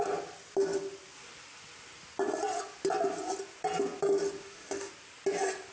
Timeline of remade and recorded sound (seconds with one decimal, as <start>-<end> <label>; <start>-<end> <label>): 0.0-4.4 recorded; 4.4-4.9 remade; 4.9-5.7 recorded